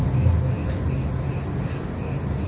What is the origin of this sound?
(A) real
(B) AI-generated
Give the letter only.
A